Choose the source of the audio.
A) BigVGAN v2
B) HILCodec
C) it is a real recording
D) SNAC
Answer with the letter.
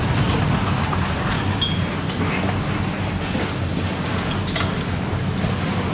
C